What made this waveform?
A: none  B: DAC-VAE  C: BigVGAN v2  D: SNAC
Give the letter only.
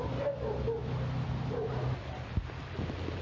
A